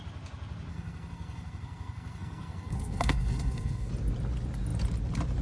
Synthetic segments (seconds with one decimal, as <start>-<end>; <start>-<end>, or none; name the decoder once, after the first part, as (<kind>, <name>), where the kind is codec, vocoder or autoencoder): 0.7-3.9 (codec, SNAC)